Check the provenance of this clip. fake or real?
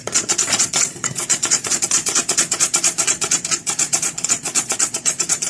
fake